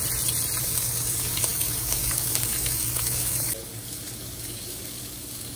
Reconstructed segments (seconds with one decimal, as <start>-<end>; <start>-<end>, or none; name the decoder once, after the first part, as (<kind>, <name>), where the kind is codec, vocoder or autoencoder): 0.6-5.6 (codec, DAC)